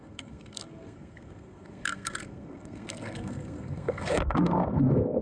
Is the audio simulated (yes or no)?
yes